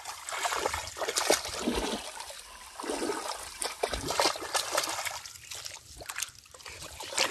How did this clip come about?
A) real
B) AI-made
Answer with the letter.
A